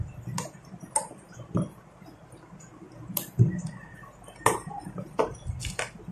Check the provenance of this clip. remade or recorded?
recorded